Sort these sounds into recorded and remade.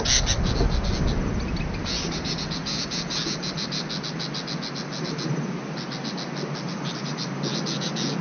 recorded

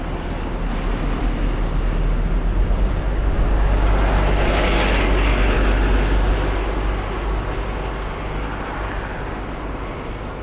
recorded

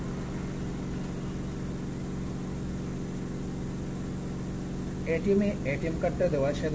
recorded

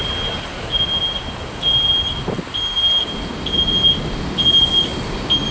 recorded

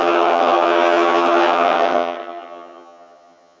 remade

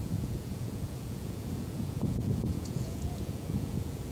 remade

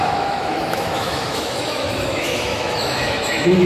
remade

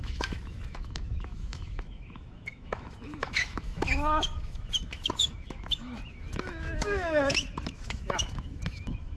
remade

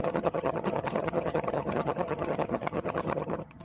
remade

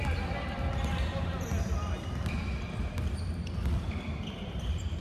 recorded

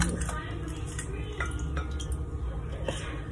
recorded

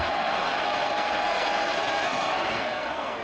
remade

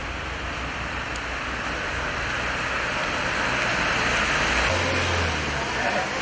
recorded